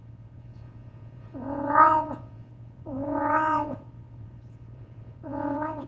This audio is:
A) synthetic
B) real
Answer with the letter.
A